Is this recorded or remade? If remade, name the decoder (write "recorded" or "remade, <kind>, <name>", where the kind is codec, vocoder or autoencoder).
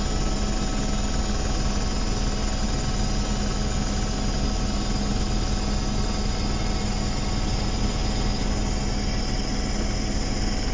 recorded